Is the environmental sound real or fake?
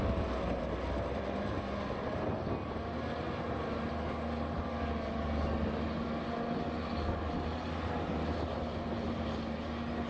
real